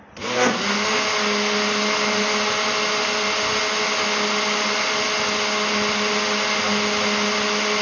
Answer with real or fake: real